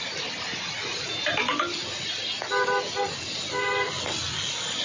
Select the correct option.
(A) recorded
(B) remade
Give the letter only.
A